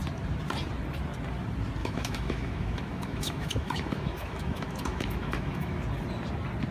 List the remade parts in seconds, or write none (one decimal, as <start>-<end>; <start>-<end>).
1.8-5.8